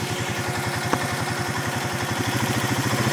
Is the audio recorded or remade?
remade